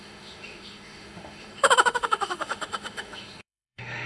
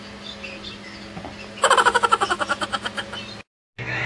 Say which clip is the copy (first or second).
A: first